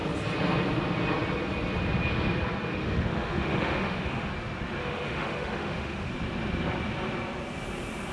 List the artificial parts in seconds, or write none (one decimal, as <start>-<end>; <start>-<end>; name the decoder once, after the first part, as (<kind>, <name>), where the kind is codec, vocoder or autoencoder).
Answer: 2.7-4.3 (autoencoder, DAC-VAE); 4.8-6.1